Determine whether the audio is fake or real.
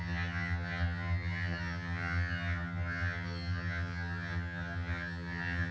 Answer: fake